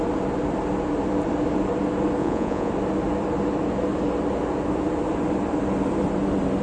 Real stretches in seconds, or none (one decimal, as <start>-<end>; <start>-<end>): 0.0-2.2; 2.7-6.6